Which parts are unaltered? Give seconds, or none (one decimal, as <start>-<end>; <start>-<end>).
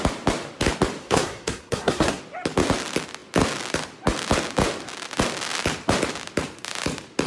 0.0-1.0; 2.2-7.3